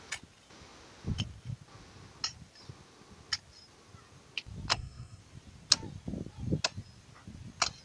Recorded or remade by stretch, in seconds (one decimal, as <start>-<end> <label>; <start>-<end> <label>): 0.0-4.7 recorded; 4.7-5.2 remade; 5.2-7.8 recorded